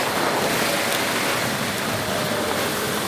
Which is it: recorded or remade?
recorded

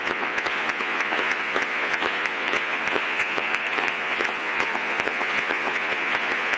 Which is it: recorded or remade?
remade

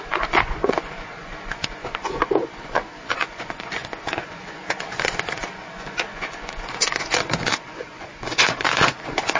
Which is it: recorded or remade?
remade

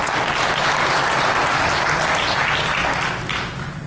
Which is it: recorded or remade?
recorded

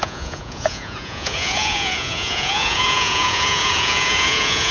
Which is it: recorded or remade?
remade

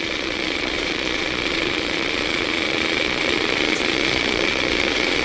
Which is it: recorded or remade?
remade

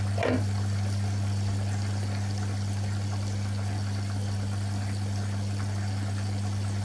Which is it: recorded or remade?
recorded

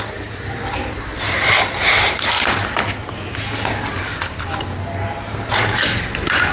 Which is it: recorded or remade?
recorded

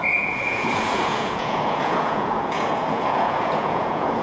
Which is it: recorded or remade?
remade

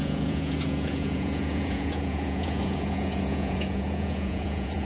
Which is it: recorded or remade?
remade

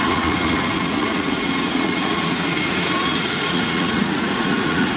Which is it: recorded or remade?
remade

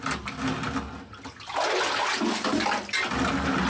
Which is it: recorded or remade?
recorded